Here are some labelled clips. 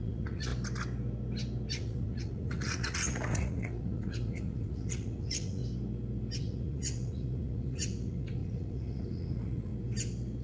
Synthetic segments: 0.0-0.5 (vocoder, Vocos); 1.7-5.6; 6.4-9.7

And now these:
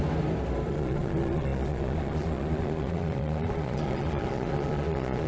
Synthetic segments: 0.7-5.3 (vocoder, Vocos)

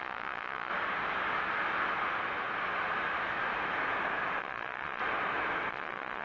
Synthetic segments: 0.0-0.7 (vocoder, Vocos); 4.4-5.0; 5.7-6.2

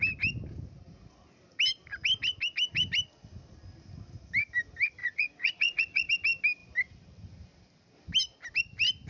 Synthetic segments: 5.0-6.1 (vocoder, Vocos)

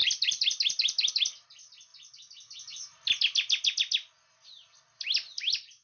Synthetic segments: none

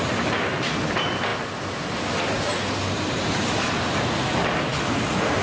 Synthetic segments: none

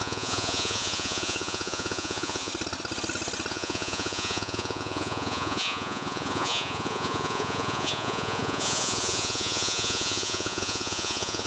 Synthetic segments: 0.0-2.5 (vocoder, Vocos); 3.5-11.5